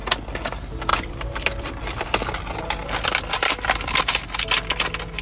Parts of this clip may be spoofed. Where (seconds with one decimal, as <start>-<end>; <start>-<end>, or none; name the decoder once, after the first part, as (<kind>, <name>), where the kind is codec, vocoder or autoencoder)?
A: 0.9-4.0 (vocoder, BigVGAN v2)